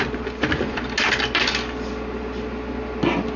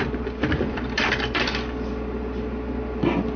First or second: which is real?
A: first